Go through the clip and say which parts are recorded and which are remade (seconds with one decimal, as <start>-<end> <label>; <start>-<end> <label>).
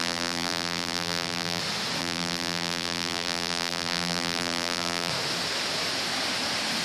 0.0-1.6 remade; 1.6-2.0 recorded; 2.0-5.1 remade; 5.1-6.8 recorded